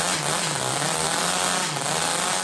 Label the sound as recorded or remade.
recorded